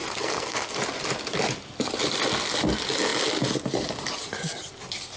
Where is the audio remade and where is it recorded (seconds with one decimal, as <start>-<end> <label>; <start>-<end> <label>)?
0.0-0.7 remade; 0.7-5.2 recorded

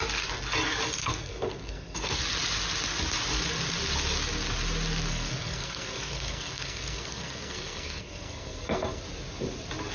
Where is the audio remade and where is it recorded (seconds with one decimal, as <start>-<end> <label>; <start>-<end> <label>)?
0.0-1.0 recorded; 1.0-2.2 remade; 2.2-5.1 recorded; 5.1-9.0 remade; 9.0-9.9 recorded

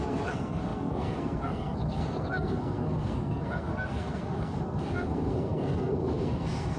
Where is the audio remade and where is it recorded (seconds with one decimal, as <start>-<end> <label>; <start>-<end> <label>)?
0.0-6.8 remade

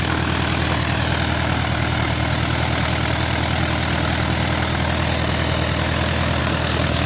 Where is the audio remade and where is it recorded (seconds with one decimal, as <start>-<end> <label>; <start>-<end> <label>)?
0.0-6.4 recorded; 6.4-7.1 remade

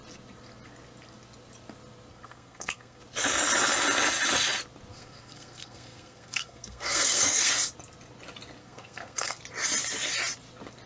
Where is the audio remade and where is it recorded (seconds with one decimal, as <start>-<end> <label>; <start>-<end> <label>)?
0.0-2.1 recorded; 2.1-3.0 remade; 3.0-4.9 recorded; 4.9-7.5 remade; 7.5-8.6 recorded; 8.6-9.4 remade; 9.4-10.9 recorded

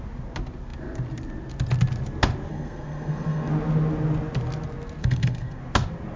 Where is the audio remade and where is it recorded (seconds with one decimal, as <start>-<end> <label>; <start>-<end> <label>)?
0.0-2.5 recorded; 2.5-3.5 remade; 3.5-5.0 recorded; 5.0-5.6 remade; 5.6-6.2 recorded

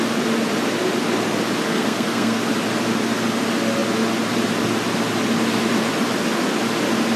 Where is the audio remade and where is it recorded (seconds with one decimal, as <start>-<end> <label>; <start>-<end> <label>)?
0.0-1.7 recorded; 1.7-2.4 remade; 2.4-7.2 recorded